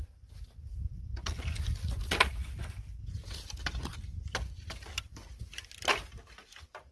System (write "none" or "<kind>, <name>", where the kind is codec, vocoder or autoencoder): none